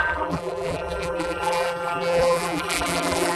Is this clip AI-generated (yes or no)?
yes